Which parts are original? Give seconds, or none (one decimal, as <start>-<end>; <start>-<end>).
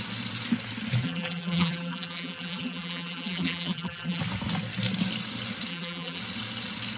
0.0-1.0; 4.2-5.7; 6.2-7.0